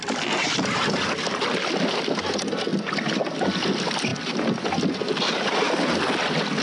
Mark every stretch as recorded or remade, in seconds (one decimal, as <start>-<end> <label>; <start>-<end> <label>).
0.0-6.6 recorded